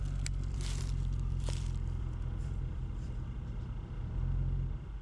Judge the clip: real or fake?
fake